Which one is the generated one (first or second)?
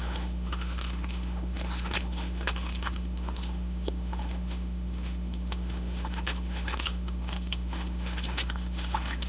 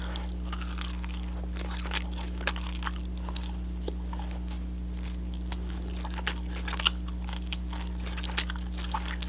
first